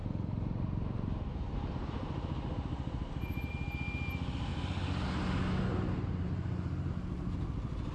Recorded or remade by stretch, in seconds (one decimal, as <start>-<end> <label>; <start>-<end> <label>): 0.0-3.5 remade; 3.5-7.9 recorded